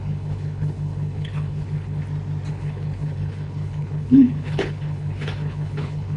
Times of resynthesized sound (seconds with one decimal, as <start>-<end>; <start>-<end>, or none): 0.0-2.0; 2.5-6.2